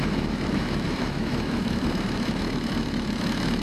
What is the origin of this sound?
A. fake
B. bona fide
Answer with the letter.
A